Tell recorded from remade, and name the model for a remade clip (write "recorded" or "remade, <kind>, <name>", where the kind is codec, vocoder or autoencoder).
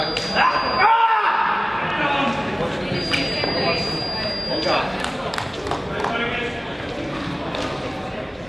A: recorded